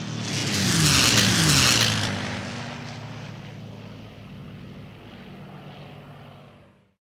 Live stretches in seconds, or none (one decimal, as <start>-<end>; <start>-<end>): 0.0-7.0

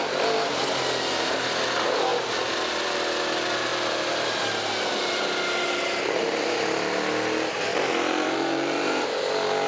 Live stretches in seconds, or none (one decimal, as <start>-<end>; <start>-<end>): 0.0-7.7; 9.1-9.7

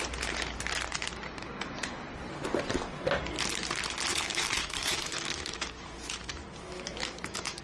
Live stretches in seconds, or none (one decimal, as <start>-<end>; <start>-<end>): 0.0-4.1

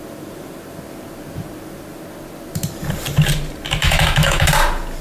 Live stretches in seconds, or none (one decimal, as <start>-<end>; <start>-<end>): 0.0-3.8; 4.5-5.0

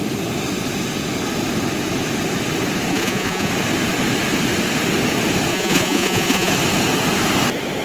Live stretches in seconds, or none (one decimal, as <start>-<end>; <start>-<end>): 0.0-2.9; 3.5-5.5; 6.5-7.8

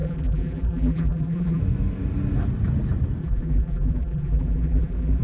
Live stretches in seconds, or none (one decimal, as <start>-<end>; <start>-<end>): 1.6-3.2

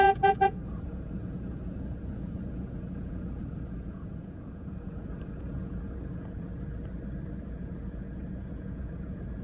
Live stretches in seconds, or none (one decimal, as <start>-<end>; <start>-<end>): 6.5-7.4